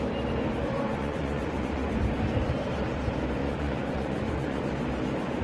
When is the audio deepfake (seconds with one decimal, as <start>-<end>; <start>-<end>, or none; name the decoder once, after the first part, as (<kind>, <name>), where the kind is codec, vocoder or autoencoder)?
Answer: 0.9-1.9 (vocoder, Vocos); 3.4-4.7